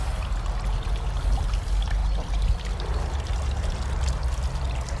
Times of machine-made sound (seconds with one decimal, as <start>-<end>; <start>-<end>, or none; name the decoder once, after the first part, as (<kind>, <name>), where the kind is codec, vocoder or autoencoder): none